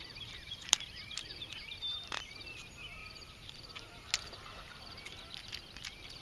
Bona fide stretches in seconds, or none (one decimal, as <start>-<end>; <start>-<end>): 3.0-5.6